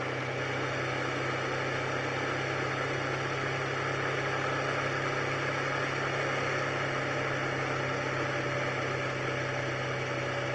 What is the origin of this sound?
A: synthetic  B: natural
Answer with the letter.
B